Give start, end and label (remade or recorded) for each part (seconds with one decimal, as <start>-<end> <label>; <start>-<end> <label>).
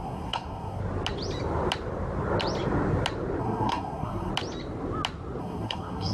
0.0-0.8 remade; 0.8-3.4 recorded; 3.4-4.3 remade; 4.3-5.4 recorded; 5.4-6.1 remade